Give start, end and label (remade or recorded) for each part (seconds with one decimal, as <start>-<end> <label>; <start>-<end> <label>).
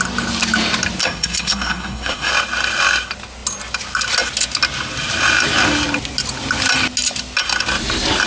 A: 0.0-1.0 recorded; 1.0-2.3 remade; 2.3-8.3 recorded